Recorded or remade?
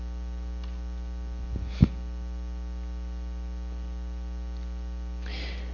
recorded